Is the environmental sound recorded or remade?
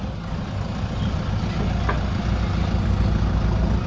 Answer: recorded